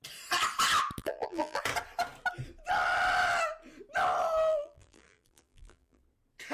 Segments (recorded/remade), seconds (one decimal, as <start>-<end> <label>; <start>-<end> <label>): 0.0-1.0 recorded; 1.0-1.6 remade; 1.6-4.5 recorded; 4.5-6.0 remade; 6.0-6.5 recorded